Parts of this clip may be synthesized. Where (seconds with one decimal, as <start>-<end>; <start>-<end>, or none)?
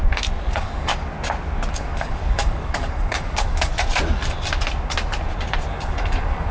0.5-0.9; 1.7-3.7; 5.7-6.5